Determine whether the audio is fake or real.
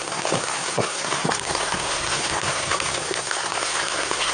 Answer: fake